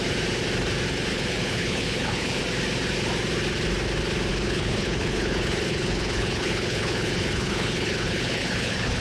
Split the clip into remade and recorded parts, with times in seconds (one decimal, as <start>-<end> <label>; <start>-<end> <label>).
0.0-1.1 recorded; 1.1-2.4 remade; 2.4-4.3 recorded; 4.3-9.0 remade